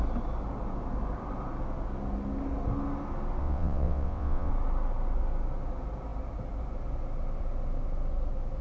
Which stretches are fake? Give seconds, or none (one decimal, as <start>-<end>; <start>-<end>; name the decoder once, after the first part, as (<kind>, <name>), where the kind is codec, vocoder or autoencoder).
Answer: 3.4-4.5 (vocoder, WaveNeXt)